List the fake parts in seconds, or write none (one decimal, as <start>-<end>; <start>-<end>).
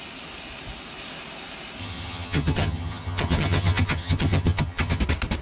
1.8-5.0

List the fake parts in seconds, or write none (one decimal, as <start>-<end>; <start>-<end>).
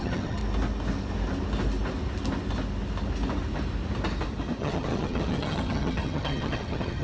0.0-0.4; 4.6-7.0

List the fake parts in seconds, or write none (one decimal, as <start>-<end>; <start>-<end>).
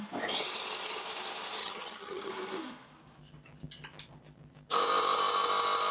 1.6-2.3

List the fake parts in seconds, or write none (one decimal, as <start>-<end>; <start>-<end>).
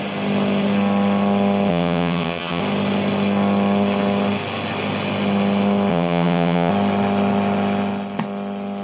1.7-2.6; 5.9-6.7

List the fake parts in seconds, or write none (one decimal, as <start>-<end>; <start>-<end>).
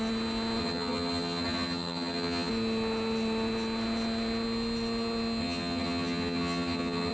0.6-2.5; 5.4-7.1